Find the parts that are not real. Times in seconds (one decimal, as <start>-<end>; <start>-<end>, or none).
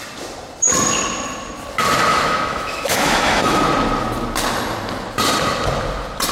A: 2.1-3.6